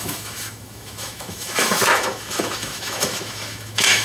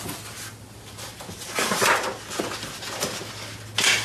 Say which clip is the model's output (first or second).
first